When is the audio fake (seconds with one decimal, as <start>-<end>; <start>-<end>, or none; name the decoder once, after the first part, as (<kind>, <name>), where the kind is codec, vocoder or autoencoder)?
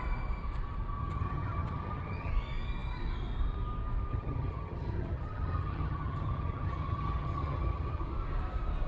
1.0-2.3 (vocoder, HiFi-GAN); 4.1-8.0